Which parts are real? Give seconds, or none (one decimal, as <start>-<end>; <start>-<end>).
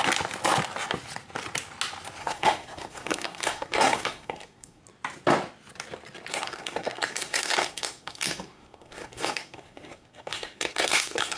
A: 0.0-2.2; 4.8-6.3